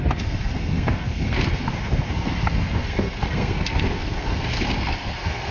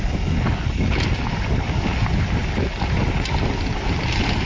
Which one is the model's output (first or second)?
first